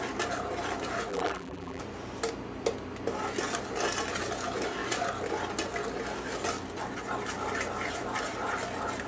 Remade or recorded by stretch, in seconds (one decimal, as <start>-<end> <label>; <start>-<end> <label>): 0.0-1.1 recorded; 1.1-1.8 remade; 1.8-9.1 recorded